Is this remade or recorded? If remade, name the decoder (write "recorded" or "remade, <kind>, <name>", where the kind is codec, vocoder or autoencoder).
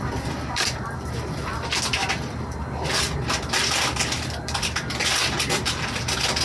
recorded